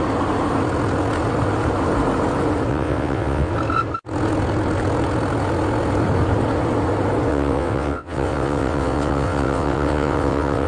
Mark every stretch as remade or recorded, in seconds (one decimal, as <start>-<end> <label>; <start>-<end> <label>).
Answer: 0.0-2.7 recorded; 2.7-3.5 remade; 3.5-7.3 recorded; 7.3-10.7 remade